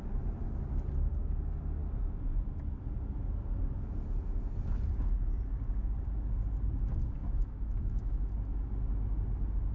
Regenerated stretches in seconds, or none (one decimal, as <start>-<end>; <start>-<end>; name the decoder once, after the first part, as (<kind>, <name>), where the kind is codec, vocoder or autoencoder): 7.2-8.3 (autoencoder, DAC-VAE)